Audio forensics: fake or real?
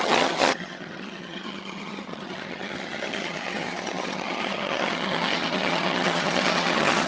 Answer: fake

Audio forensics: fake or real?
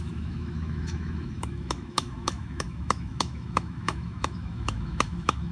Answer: fake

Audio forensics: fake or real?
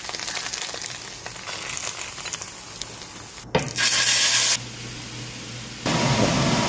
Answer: real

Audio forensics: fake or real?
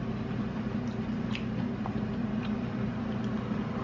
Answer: real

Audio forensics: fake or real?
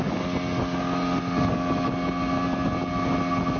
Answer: real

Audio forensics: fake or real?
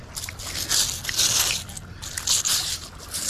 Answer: real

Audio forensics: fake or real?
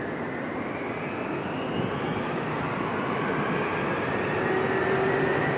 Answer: real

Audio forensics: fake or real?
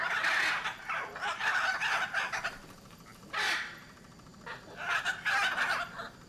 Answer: real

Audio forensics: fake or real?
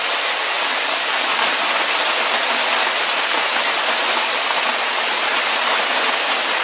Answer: real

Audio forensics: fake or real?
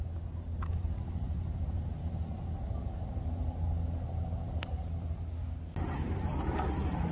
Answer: real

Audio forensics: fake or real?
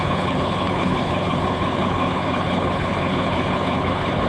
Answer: fake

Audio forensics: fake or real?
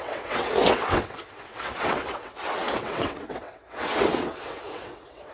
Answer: fake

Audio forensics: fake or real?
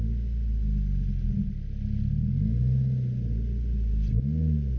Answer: real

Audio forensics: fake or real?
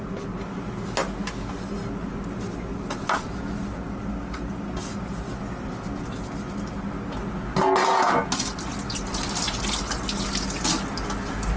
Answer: real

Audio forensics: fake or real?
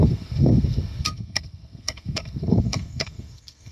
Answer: fake